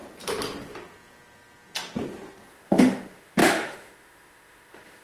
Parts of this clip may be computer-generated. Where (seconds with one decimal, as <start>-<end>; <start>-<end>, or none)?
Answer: 2.5-5.0